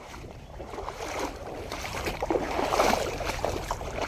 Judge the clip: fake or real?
fake